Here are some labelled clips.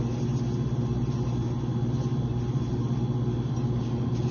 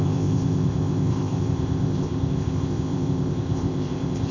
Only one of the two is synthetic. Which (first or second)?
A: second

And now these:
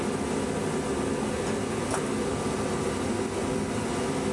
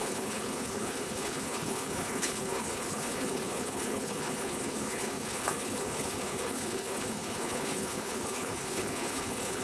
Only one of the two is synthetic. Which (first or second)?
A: second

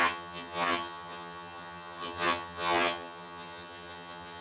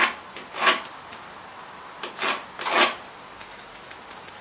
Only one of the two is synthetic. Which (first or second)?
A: first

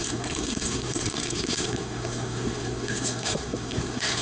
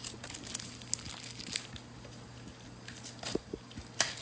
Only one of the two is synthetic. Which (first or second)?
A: first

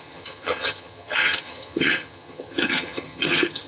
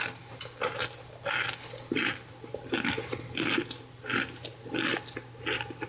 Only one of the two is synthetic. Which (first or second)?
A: first